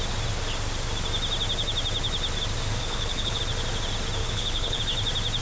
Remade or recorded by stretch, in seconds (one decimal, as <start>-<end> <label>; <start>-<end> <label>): 0.0-2.8 recorded; 2.8-3.4 remade; 3.4-4.2 recorded; 4.2-4.8 remade; 4.8-5.4 recorded